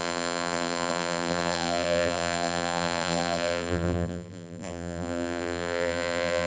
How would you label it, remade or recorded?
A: remade